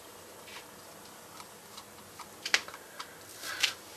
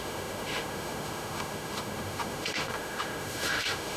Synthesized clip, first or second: second